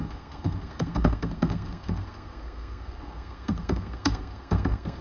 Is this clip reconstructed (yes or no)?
yes